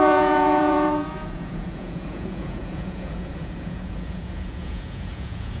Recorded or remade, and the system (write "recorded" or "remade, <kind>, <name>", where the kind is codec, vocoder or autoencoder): remade, vocoder, Vocos